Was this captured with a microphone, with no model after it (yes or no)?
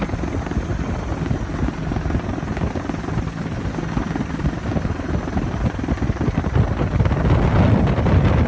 yes